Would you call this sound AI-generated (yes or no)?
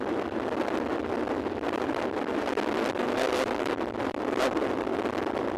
yes